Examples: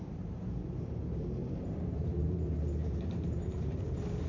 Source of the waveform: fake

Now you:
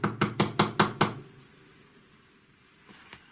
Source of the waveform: real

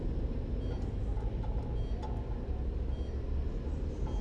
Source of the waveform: real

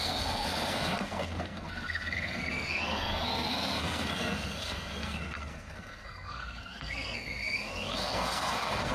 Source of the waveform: fake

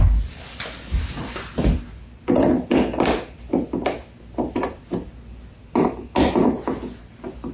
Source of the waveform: real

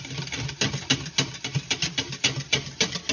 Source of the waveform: real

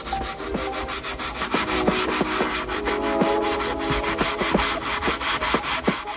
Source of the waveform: real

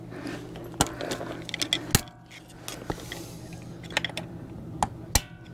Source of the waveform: real